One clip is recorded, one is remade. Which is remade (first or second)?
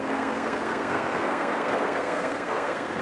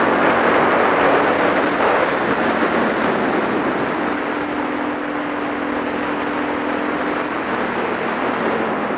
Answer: first